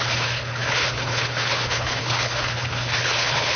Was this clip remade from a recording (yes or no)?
yes